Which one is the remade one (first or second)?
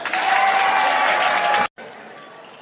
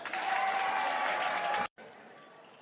second